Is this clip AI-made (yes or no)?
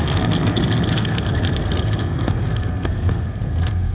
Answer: yes